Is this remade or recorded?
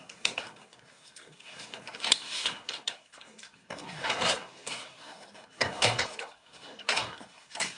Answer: remade